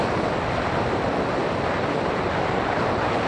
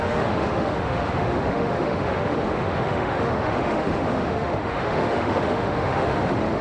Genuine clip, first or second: first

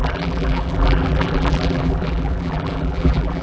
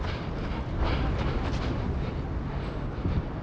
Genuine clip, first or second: second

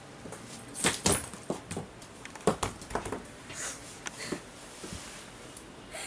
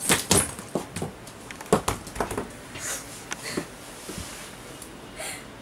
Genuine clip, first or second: second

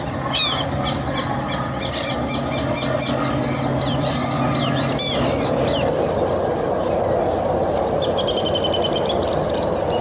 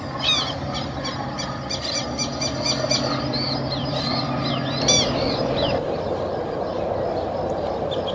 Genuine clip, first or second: first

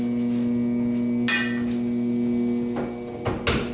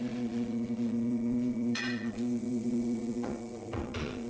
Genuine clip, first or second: first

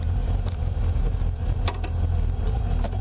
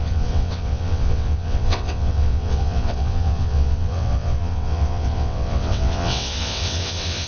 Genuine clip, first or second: first